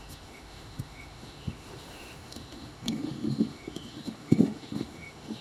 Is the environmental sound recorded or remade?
remade